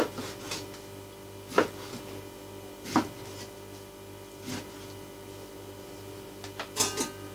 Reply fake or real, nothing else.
real